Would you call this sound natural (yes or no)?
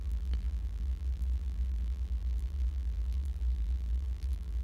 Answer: no